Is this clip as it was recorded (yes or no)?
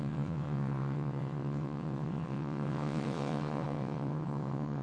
no